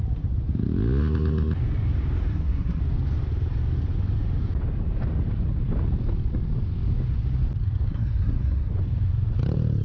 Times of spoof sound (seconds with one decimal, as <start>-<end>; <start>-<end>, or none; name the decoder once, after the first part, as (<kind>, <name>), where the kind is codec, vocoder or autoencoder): 2.3-2.8 (codec, SNAC); 7.9-8.7